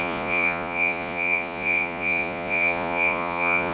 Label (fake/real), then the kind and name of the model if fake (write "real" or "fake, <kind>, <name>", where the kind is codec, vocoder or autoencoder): fake, vocoder, Vocos